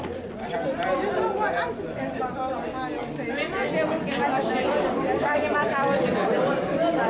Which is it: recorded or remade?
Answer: recorded